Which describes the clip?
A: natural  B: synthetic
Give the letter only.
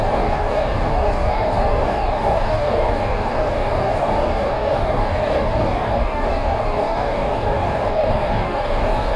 B